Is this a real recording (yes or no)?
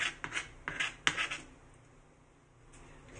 yes